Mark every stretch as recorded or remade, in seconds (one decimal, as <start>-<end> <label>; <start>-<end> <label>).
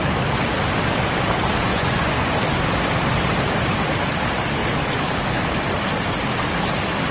0.0-1.7 recorded; 1.7-2.3 remade; 2.3-7.1 recorded